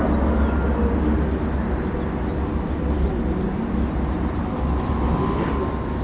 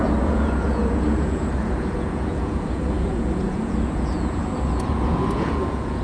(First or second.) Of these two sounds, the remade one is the second